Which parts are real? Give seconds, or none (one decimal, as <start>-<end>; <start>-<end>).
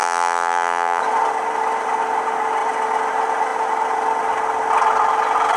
1.0-5.6